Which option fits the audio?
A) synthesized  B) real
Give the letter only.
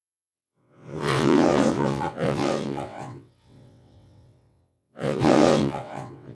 A